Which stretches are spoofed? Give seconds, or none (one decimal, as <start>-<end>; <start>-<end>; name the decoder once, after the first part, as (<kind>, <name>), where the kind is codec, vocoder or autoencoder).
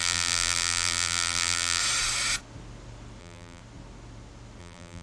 0.0-1.8 (vocoder, BigVGAN v2); 3.2-3.6; 4.6-5.0